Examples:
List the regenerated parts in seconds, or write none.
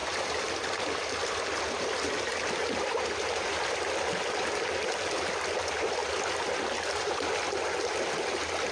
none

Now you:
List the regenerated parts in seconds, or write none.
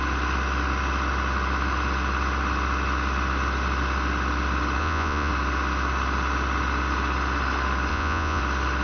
4.8-5.3 (vocoder, Vocos); 7.9-8.4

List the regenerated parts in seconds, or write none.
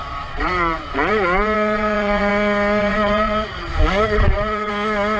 0.0-2.3 (vocoder, Vocos); 2.8-4.7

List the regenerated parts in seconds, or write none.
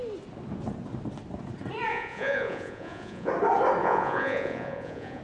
1.9-3.3 (vocoder, Vocos); 3.8-5.2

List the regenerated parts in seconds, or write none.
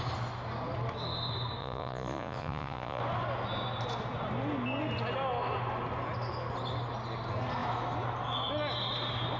1.6-3.0 (vocoder, Vocos)